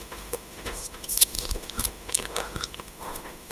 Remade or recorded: remade